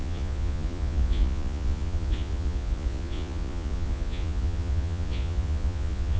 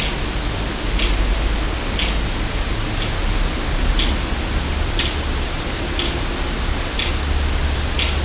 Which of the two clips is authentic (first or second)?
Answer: second